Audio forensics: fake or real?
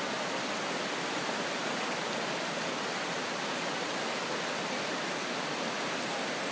real